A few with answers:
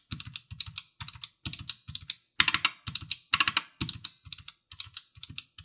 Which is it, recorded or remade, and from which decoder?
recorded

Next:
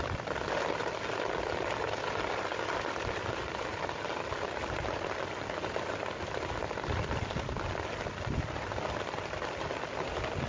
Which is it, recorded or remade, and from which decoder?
recorded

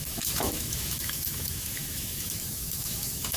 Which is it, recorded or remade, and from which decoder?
remade, autoencoder, DAC-VAE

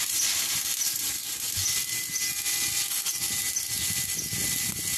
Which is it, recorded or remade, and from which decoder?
recorded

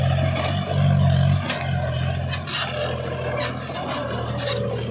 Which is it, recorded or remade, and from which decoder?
recorded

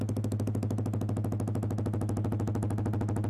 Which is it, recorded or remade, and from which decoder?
recorded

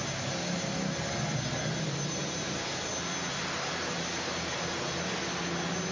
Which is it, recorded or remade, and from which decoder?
recorded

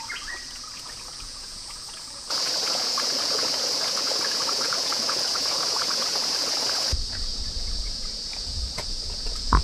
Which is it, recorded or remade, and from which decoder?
remade, vocoder, Vocos